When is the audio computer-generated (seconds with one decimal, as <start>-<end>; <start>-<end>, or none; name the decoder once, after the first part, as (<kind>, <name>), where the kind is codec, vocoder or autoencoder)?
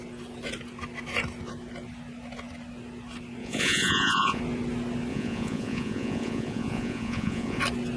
3.4-4.4 (vocoder, Vocos); 5.1-7.6